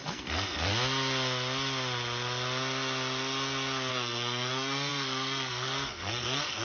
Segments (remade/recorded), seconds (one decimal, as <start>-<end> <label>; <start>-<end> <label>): 0.0-0.7 remade; 0.7-3.9 recorded; 3.9-6.6 remade